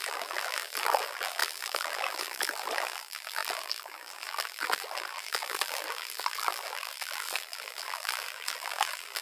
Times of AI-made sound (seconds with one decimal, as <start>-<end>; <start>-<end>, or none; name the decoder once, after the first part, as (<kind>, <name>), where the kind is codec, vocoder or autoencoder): 0.0-9.2 (vocoder, BigVGAN v2)